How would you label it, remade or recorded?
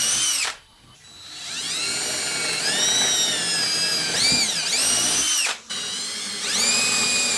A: recorded